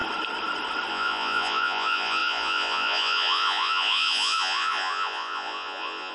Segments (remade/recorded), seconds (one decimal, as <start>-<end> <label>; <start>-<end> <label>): 0.0-0.9 recorded; 0.9-6.1 remade